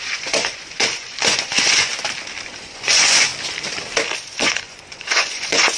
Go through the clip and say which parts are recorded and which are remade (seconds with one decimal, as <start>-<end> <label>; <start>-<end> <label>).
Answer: 0.0-1.9 remade; 1.9-2.6 recorded; 2.6-3.3 remade; 3.3-4.3 recorded; 4.3-5.8 remade